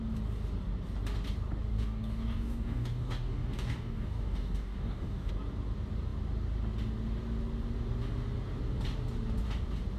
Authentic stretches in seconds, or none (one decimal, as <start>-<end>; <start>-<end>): 0.0-1.7; 5.3-10.0

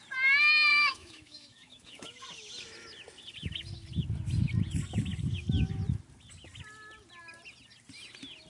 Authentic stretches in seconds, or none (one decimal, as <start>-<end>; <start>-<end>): 0.0-0.7; 2.2-8.5